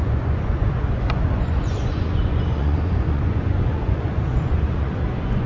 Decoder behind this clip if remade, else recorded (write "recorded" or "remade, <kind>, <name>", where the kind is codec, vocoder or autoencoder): remade, vocoder, Vocos